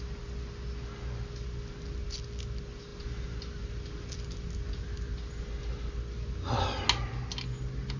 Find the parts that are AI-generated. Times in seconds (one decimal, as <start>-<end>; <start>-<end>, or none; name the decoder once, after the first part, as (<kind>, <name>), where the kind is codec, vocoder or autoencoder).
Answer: none